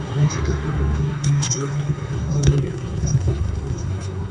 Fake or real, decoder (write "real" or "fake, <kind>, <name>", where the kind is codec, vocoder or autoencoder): fake, codec, SNAC